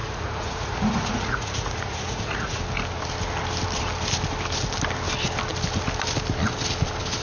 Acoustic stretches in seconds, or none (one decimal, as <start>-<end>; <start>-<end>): 2.6-7.2